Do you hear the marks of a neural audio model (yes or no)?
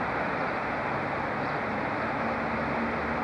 no